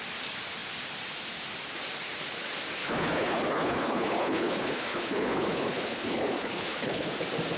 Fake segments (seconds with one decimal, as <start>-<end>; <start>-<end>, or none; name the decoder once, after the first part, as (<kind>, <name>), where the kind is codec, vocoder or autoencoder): 2.8-7.1 (codec, HILCodec)